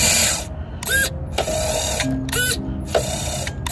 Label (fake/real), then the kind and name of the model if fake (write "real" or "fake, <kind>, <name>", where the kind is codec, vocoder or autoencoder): real